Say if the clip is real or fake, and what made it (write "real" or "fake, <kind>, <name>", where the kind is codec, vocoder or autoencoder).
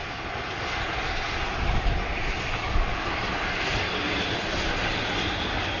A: real